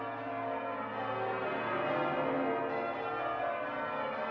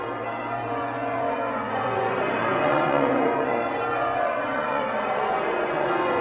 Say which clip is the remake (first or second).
second